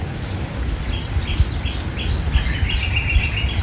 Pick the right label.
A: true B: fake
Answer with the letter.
A